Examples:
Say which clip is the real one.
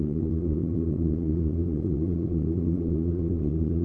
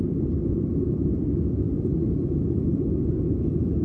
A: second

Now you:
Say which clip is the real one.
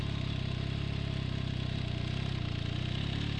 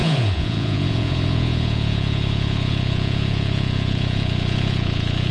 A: first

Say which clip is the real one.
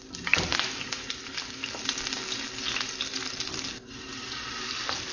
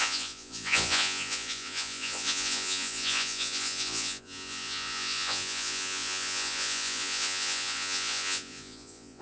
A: first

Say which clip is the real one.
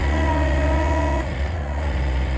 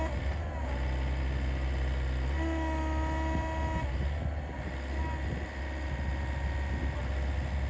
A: second